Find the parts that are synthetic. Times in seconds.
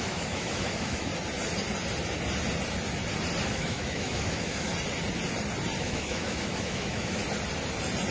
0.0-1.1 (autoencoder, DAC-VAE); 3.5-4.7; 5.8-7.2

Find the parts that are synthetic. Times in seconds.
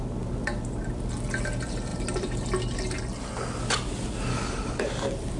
4.3-4.8 (codec, DAC)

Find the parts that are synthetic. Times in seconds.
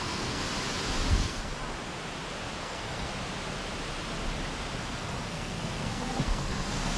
0.0-0.4 (codec, SNAC); 1.1-1.5; 2.6-3.1; 4.8-7.0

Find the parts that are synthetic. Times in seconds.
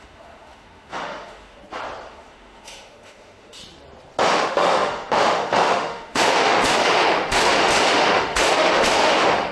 0.0-1.6 (autoencoder, DAC-VAE); 2.1-3.6; 4.2-9.5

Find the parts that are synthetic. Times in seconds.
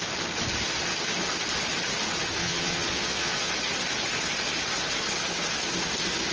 2.4-3.5 (vocoder, Vocos)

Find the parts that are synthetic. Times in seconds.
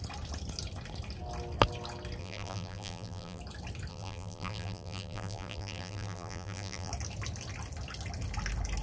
2.2-3.4 (vocoder, BigVGAN v2); 3.9-6.9